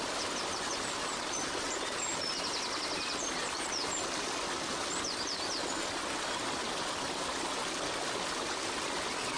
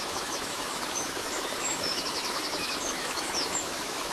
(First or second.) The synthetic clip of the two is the second